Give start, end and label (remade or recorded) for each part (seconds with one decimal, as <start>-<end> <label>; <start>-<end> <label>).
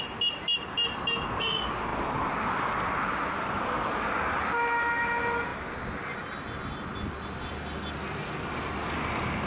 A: 0.0-9.5 recorded